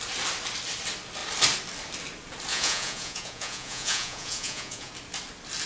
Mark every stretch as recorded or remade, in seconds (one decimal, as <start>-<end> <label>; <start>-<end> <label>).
0.0-2.5 recorded; 2.5-4.9 remade; 4.9-5.7 recorded